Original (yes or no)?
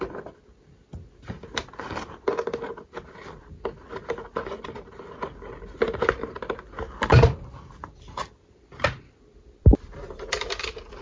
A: yes